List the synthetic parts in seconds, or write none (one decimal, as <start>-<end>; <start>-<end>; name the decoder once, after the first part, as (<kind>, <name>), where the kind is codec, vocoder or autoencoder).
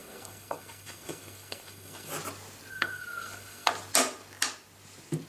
0.0-2.1 (codec, SNAC); 2.7-3.7